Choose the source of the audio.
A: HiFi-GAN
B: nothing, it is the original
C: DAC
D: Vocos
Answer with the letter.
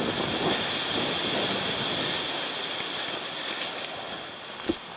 B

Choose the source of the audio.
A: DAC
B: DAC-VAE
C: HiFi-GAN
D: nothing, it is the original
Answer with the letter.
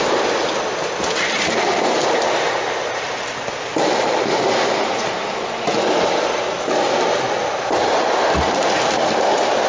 D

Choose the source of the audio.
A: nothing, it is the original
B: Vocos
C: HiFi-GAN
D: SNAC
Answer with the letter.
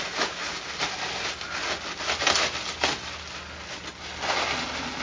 A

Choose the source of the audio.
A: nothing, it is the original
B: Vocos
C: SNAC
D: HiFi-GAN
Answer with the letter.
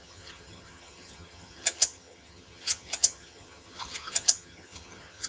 D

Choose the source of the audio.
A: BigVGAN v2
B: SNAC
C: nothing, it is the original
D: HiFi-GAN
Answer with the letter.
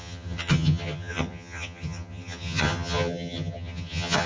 D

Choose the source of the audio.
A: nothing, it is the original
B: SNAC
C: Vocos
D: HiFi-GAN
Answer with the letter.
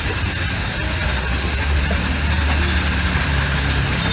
A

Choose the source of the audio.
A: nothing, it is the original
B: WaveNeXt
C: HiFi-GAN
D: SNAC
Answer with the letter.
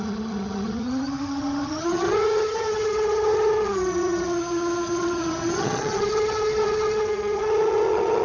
C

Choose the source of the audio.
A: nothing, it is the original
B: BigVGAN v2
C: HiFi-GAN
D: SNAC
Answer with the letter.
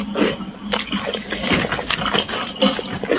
A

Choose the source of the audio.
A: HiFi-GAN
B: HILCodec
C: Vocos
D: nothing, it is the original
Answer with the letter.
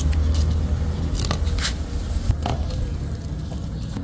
D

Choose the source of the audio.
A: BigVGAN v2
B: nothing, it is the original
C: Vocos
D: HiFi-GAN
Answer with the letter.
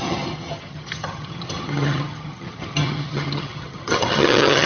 D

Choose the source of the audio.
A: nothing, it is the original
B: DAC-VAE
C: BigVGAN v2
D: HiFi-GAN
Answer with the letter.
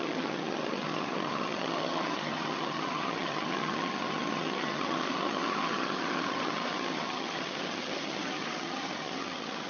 D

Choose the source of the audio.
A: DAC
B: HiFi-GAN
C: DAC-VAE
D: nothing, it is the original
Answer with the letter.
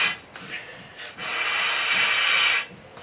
D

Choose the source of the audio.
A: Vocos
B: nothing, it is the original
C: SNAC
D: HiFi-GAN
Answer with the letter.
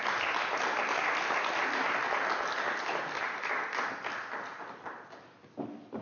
B